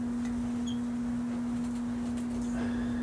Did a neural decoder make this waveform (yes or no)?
no